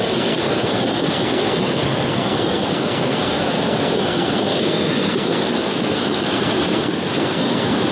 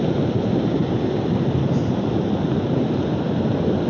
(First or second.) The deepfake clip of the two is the first